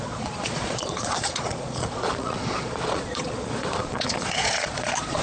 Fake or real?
fake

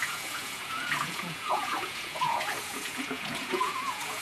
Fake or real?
fake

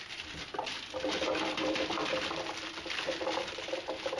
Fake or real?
real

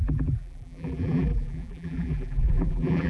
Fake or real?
fake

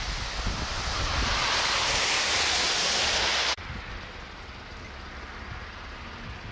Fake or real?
real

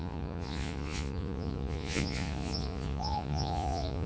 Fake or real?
fake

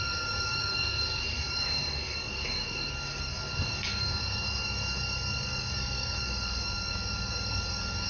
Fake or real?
fake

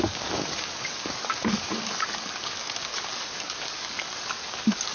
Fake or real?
fake